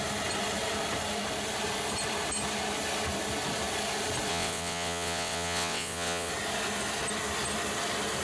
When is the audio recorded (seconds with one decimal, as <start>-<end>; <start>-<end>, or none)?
0.0-4.3; 6.3-8.2